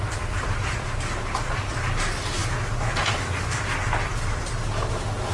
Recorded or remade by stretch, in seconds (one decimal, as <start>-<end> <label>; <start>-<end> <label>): 0.0-5.3 recorded

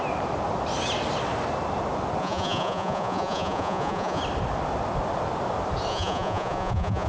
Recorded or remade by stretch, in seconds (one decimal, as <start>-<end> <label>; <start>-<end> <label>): 0.0-2.2 recorded; 2.2-4.2 remade; 4.2-5.9 recorded; 5.9-7.1 remade

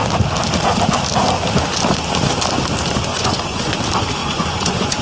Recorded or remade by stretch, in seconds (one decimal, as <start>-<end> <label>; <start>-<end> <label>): 0.0-3.1 recorded; 3.1-3.7 remade; 3.7-4.2 recorded; 4.2-5.0 remade

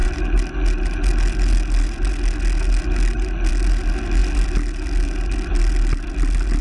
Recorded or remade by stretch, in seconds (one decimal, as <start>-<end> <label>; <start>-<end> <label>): 0.0-6.6 recorded

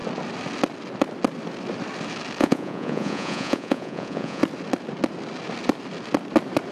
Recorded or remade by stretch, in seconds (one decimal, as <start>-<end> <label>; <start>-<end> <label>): 0.0-2.4 recorded; 2.4-4.4 remade; 4.4-6.7 recorded

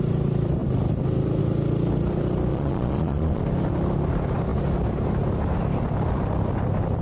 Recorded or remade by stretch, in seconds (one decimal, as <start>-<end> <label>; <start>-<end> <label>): 0.0-2.5 recorded; 2.5-3.4 remade; 3.4-7.0 recorded

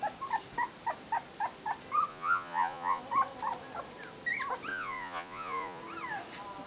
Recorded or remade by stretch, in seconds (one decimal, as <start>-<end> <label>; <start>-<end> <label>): 0.0-2.1 recorded; 2.1-3.0 remade; 3.0-4.7 recorded; 4.7-5.8 remade; 5.8-6.7 recorded

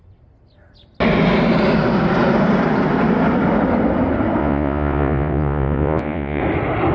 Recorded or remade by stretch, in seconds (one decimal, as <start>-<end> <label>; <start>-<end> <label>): 0.0-4.4 recorded; 4.4-6.4 remade; 6.4-6.9 recorded